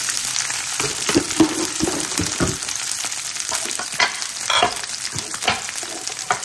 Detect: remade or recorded recorded